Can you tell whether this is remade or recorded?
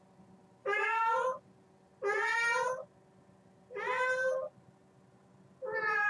recorded